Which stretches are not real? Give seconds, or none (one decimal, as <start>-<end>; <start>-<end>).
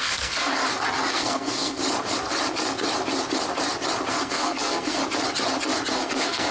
0.0-0.5; 1.1-1.8; 4.1-5.0; 5.9-6.5